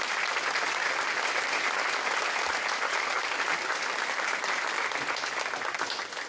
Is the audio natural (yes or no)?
yes